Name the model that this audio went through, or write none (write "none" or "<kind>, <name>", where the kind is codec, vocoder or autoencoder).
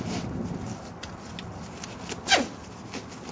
none